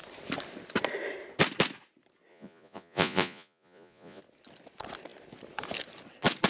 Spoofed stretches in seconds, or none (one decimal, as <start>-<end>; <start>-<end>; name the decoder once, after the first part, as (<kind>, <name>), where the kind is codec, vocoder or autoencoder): 2.3-4.2 (vocoder, Vocos)